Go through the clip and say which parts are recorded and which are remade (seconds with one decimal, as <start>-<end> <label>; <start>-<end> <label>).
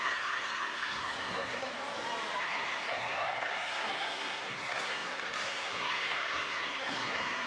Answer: 0.0-1.7 remade; 1.7-2.4 recorded; 2.4-7.5 remade